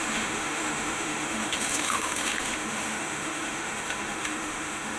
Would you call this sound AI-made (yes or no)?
yes